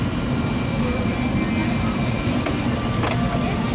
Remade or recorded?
recorded